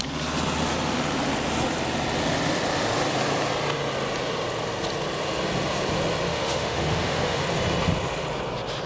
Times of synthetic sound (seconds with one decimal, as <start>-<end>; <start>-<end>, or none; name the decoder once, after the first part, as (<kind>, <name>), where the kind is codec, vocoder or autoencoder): 6.3-7.4 (autoencoder, DAC-VAE)